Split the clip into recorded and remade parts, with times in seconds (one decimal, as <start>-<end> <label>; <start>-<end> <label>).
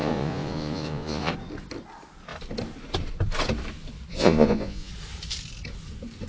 0.0-1.3 remade; 1.3-4.1 recorded; 4.1-4.9 remade; 4.9-6.3 recorded